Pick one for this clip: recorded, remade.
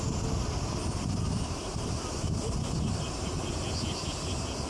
recorded